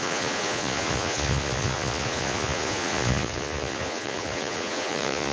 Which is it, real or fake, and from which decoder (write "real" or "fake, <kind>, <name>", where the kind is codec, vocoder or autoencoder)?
fake, vocoder, Vocos